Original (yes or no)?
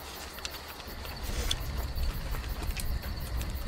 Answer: yes